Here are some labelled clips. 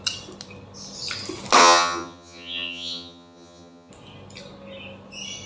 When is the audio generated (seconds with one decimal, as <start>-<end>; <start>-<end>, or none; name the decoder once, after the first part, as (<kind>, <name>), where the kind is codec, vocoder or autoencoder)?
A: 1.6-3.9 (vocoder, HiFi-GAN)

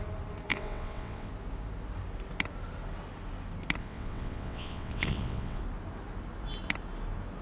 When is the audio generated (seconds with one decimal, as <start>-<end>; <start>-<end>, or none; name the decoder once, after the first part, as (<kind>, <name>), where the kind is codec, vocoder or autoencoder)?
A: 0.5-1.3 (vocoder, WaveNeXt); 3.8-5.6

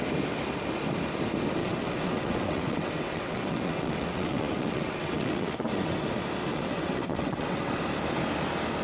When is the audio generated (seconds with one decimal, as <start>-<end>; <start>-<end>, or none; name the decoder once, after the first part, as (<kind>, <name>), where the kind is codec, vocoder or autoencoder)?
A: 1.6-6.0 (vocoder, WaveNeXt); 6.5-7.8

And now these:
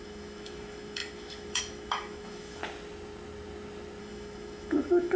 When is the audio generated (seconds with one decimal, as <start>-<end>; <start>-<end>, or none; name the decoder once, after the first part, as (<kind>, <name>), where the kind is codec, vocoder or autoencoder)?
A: 0.0-2.6 (autoencoder, DAC-VAE); 4.0-5.2